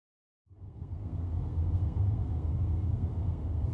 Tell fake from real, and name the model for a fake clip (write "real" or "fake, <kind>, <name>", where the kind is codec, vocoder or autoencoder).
fake, codec, SNAC